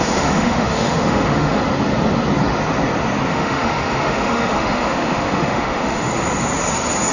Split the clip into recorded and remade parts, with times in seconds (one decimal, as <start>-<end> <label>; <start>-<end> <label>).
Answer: 0.0-1.6 remade; 1.6-3.3 recorded; 3.3-6.1 remade; 6.1-7.1 recorded